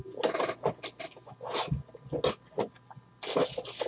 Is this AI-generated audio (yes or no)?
no